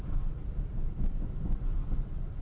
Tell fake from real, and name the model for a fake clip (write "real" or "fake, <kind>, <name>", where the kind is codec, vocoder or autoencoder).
real